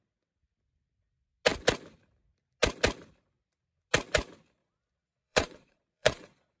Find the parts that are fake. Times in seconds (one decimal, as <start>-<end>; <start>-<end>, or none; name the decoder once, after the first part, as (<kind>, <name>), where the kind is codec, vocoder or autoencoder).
4.6-6.6 (vocoder, Vocos)